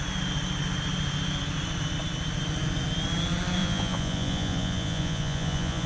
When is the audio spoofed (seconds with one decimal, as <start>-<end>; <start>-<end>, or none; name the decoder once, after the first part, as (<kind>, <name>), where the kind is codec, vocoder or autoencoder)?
3.6-5.9 (vocoder, Vocos)